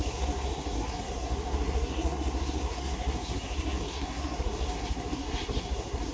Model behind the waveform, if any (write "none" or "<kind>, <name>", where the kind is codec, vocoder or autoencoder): codec, SNAC